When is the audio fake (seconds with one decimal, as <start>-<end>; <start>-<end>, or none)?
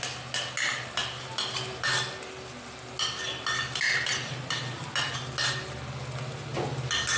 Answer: none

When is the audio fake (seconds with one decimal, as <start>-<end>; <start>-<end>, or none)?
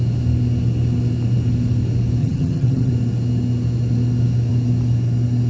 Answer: 2.2-2.9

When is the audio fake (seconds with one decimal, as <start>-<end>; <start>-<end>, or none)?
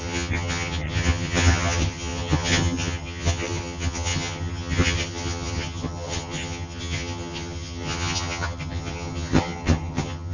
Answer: 0.0-10.3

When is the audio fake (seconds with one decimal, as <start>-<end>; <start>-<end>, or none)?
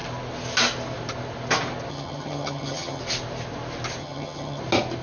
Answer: 1.9-3.0; 4.0-4.6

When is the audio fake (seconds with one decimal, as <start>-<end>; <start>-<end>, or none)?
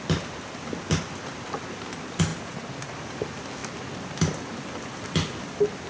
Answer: none